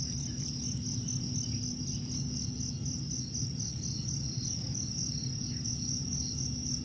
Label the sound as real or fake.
real